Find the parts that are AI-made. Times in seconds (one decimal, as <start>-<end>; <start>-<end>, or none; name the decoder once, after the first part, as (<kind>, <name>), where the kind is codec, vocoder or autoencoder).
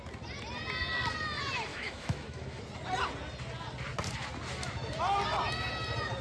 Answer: 1.7-2.6 (autoencoder, DAC-VAE)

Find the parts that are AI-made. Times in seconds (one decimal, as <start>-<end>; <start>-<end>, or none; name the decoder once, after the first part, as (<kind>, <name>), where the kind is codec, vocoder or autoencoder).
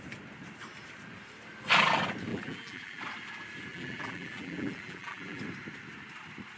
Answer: 2.3-3.0 (vocoder, BigVGAN v2); 3.7-5.4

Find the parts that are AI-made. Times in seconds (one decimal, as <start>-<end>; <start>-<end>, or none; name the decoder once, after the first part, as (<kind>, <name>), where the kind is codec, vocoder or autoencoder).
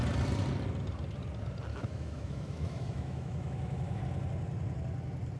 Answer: 1.7-4.0 (autoencoder, DAC-VAE)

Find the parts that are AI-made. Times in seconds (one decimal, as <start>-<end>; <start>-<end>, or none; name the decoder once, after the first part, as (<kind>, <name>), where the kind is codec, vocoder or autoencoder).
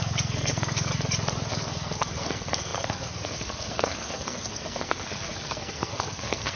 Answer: 0.0-0.9 (codec, SNAC); 1.5-6.6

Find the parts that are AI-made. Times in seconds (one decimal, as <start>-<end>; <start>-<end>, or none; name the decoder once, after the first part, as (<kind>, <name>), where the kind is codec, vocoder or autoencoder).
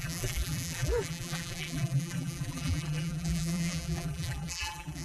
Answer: 0.0-5.0 (vocoder, BigVGAN v2)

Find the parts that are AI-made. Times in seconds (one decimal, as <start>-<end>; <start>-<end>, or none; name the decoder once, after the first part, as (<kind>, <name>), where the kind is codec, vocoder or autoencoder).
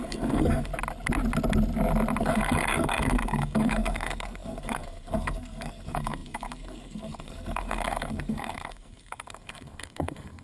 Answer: 0.0-0.7 (codec, SNAC); 2.2-10.4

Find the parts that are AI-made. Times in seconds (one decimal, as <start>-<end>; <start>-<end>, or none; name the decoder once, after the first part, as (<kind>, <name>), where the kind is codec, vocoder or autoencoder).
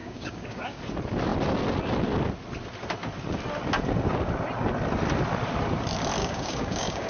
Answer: 0.0-0.8 (codec, DAC); 6.2-7.1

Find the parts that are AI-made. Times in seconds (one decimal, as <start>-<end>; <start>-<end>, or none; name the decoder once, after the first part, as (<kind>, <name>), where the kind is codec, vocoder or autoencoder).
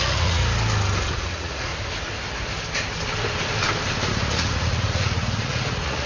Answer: 0.0-0.4 (vocoder, Vocos); 1.1-1.7; 4.1-6.1